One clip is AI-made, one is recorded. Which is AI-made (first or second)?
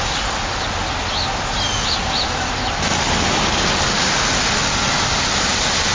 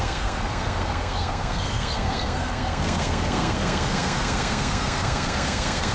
second